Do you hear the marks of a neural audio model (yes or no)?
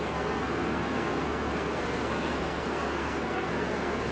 yes